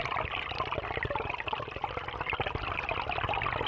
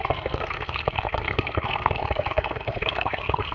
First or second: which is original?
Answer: first